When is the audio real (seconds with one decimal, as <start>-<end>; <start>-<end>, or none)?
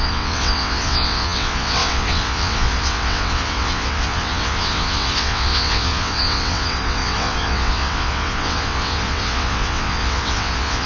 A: none